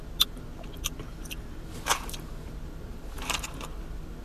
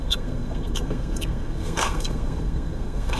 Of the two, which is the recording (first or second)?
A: first